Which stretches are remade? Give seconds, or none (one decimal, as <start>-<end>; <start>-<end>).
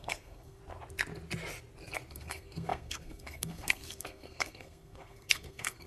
0.0-0.6; 2.1-5.9